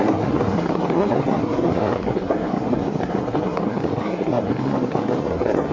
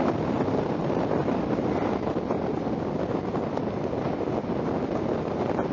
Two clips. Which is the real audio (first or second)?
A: second